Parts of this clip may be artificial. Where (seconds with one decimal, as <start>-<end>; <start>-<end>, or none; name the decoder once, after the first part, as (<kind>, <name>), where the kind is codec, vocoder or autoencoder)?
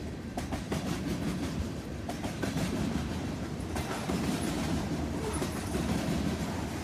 0.0-1.1 (vocoder, BigVGAN v2); 1.6-6.8